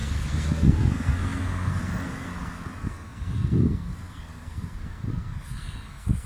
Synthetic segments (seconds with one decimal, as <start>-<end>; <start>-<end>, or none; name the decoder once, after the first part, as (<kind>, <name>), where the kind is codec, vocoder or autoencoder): 0.0-6.3 (codec, SNAC)